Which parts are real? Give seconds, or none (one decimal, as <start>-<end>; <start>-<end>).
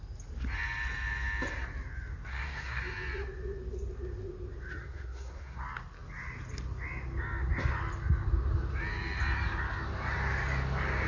0.0-2.3; 2.8-4.7; 5.6-11.1